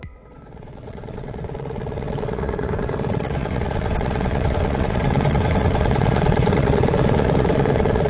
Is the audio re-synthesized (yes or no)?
yes